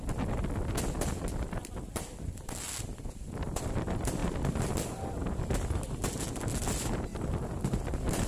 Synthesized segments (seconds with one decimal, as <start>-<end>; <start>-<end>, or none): 0.0-4.2; 5.7-8.3